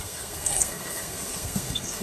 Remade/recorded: remade